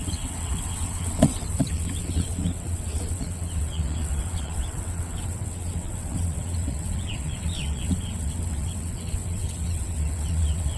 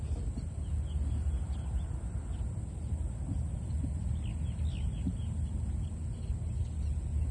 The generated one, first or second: first